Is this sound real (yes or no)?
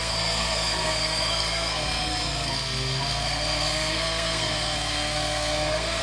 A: no